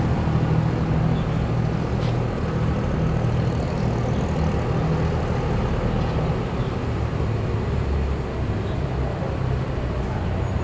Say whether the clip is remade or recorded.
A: recorded